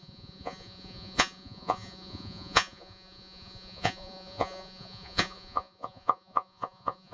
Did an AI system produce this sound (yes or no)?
yes